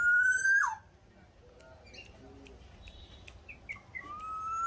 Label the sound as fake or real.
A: real